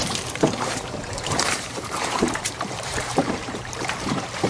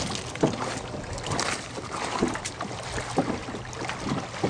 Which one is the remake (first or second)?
first